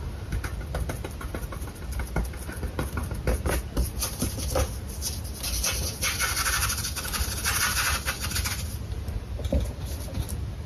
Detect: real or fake real